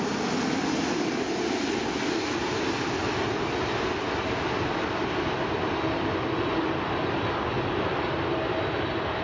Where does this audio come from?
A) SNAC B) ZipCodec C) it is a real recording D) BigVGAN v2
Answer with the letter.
C